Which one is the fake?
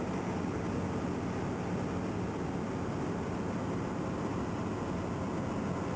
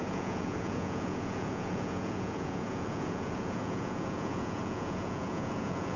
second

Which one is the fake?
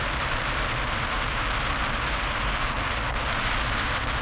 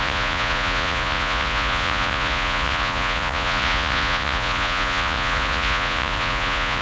second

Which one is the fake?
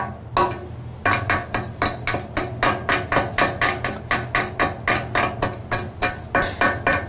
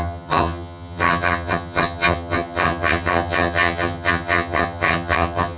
second